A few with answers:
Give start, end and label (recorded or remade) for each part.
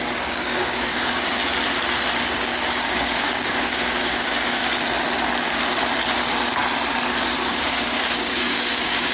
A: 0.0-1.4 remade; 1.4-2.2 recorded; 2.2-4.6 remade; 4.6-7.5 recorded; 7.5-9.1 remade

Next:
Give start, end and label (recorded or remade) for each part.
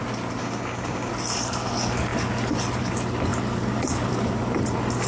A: 0.0-0.4 recorded; 0.4-1.1 remade; 1.1-5.1 recorded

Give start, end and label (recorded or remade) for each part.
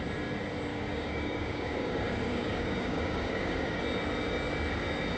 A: 0.0-0.7 recorded; 0.7-3.8 remade; 3.8-5.2 recorded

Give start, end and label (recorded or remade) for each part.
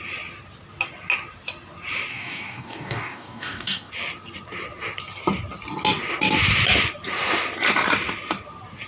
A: 0.0-2.1 recorded; 2.1-3.9 remade; 3.9-8.9 recorded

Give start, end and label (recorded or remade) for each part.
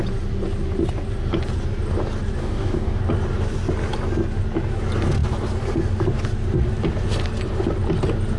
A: 0.0-2.4 recorded; 2.4-3.0 remade; 3.0-8.4 recorded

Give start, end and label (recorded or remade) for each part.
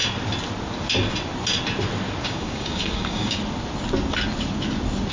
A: 0.0-2.2 recorded; 2.2-3.4 remade; 3.4-5.1 recorded